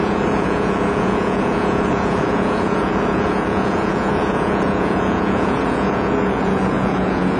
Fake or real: fake